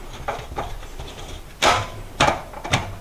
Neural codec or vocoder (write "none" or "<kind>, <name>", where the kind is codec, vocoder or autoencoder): none